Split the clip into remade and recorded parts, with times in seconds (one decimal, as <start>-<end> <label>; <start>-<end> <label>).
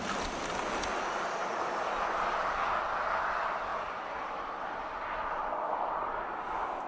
0.0-6.9 recorded